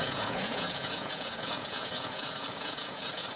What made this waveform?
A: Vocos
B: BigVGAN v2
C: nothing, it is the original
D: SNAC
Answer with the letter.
A